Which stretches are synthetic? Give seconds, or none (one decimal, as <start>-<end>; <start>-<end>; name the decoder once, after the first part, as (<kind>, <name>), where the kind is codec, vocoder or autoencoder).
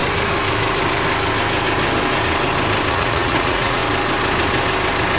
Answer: 2.9-3.8 (vocoder, Vocos)